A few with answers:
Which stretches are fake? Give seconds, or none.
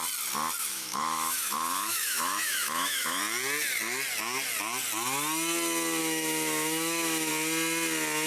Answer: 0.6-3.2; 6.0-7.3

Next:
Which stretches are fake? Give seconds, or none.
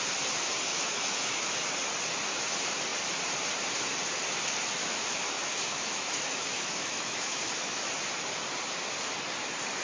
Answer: 0.7-1.5; 4.8-7.9